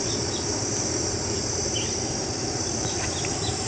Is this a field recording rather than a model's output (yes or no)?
no